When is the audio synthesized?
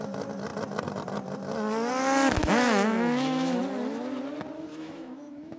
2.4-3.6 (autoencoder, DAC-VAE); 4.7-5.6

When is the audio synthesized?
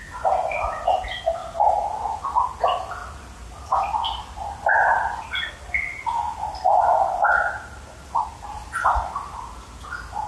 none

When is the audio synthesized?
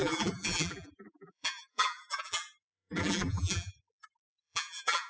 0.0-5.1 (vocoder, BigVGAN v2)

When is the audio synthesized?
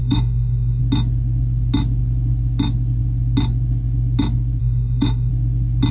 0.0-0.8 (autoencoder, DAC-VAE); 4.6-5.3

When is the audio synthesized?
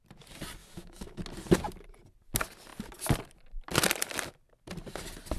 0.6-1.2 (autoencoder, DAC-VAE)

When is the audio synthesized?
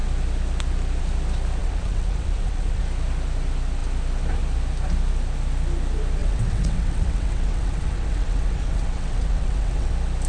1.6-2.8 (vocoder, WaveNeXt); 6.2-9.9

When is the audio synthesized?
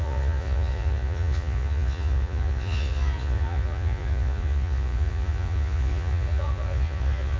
0.0-7.4 (vocoder, Vocos)